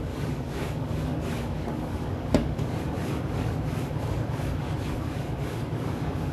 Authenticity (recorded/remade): remade